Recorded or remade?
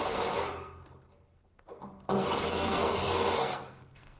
remade